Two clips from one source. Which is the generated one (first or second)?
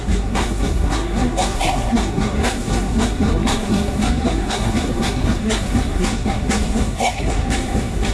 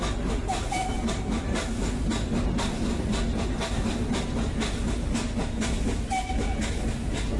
first